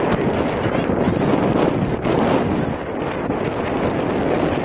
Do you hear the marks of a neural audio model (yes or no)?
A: no